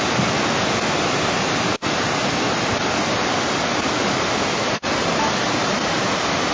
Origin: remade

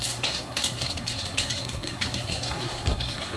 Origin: remade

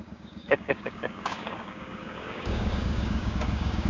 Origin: remade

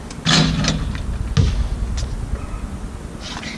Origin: recorded